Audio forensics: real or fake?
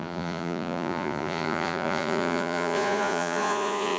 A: fake